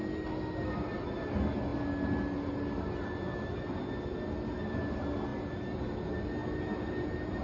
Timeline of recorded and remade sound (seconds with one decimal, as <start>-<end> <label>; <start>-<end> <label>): 0.0-7.4 recorded